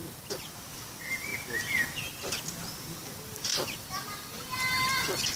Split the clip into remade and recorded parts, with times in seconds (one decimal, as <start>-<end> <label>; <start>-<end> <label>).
0.0-0.5 remade; 0.5-5.4 recorded